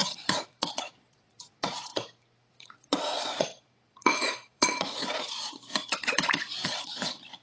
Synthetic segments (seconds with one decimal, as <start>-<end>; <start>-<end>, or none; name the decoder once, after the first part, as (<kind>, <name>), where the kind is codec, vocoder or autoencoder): 0.0-1.9 (vocoder, Vocos); 2.5-7.4